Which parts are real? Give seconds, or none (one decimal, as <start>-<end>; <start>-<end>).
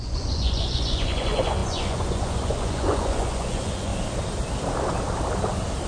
3.9-5.9